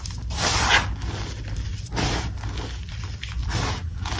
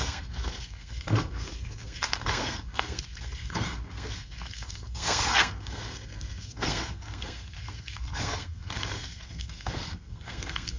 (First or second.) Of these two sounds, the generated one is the second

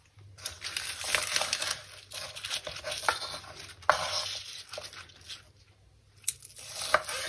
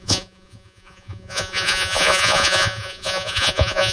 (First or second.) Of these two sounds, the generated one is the second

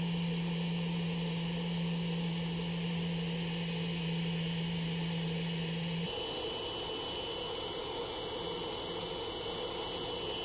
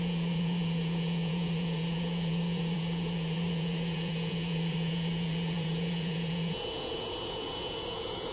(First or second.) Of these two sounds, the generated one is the second